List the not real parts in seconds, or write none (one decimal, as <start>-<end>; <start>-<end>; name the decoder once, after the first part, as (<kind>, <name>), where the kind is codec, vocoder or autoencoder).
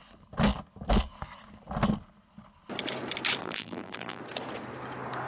3.4-4.2 (vocoder, BigVGAN v2)